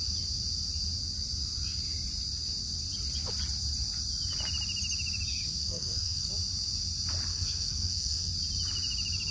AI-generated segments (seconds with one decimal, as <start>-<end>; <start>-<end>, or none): 5.6-6.3; 7.3-8.3